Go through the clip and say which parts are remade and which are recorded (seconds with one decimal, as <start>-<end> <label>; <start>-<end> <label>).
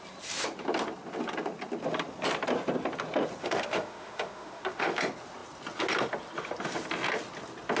0.0-3.4 recorded; 3.4-5.0 remade; 5.0-7.8 recorded